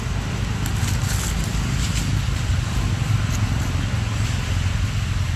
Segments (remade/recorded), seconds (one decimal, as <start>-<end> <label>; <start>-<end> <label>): 0.0-0.7 recorded; 0.7-1.5 remade; 1.5-2.1 recorded; 2.1-2.8 remade; 2.8-5.4 recorded